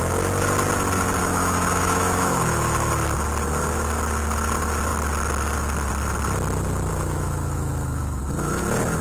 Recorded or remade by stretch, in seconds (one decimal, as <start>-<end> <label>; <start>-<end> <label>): 0.0-1.2 recorded; 1.2-2.9 remade; 2.9-6.9 recorded; 6.9-8.2 remade; 8.2-9.0 recorded